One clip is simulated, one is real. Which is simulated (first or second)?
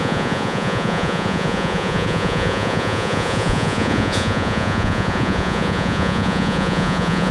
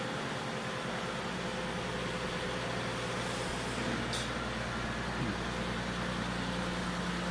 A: first